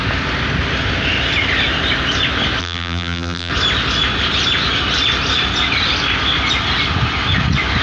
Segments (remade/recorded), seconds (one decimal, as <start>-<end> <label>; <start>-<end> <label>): 0.0-2.6 recorded; 2.6-3.5 remade; 3.5-7.8 recorded